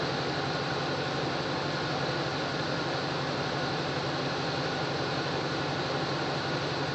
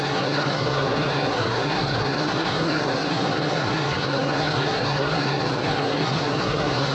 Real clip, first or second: first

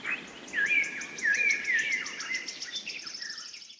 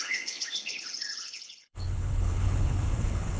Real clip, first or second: first